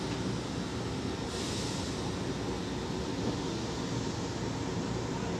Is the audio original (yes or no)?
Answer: yes